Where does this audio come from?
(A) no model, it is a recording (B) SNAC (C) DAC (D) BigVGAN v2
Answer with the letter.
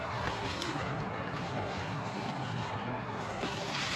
B